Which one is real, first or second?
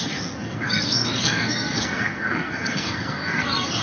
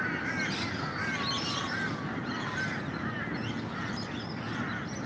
second